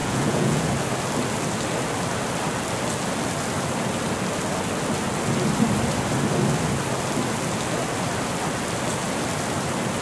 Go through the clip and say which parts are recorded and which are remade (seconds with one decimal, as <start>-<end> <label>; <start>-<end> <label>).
0.0-0.6 remade; 0.6-10.0 recorded